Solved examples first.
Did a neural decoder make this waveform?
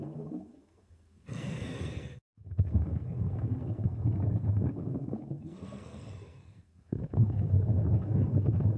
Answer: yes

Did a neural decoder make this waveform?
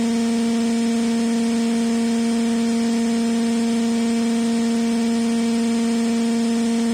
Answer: no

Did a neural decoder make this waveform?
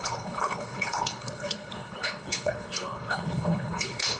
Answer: yes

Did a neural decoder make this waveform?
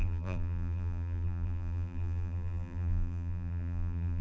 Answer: yes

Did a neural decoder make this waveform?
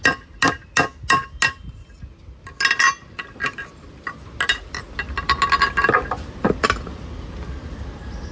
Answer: no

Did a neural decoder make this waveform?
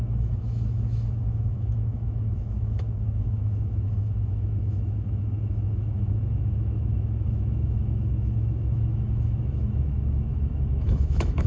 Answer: yes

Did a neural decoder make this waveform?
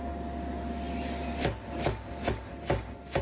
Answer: no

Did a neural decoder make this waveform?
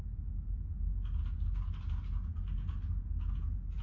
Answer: no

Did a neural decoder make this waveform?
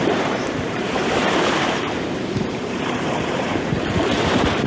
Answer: yes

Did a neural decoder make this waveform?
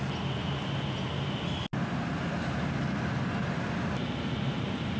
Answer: no